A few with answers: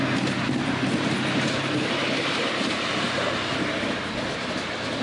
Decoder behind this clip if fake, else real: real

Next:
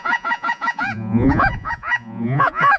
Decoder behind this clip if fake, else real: fake, vocoder, Vocos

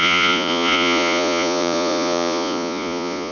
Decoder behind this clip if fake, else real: fake, vocoder, Vocos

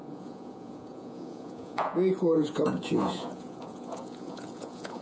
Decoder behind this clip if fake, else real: fake, vocoder, Vocos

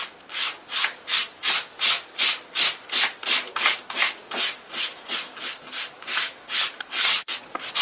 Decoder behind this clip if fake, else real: real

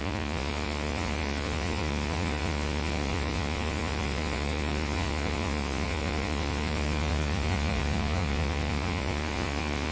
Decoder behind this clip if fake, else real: fake, vocoder, Vocos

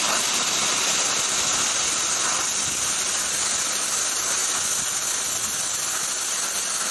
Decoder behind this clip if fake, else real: real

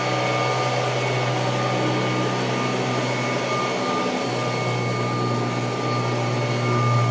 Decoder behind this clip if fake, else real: real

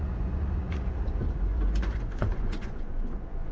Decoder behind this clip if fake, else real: fake, vocoder, Vocos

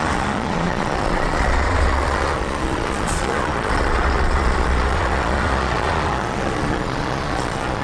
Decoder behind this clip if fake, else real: fake, vocoder, Vocos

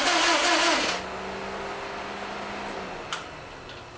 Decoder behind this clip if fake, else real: real